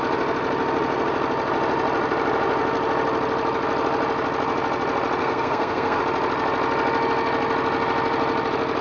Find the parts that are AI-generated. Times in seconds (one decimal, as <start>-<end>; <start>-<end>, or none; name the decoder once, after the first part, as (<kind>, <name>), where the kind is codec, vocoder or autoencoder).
5.2-6.0 (codec, SNAC)